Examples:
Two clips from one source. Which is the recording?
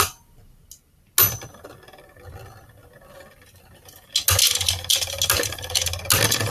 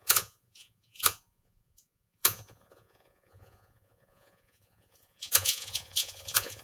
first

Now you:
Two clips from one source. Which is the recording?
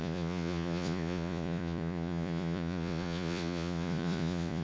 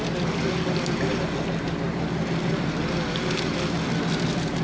second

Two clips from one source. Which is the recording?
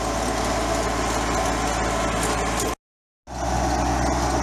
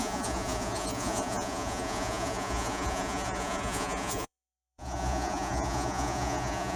first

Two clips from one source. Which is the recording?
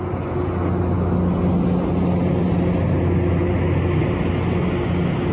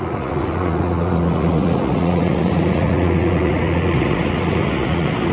first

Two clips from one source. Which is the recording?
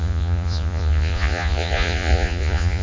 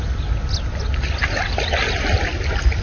second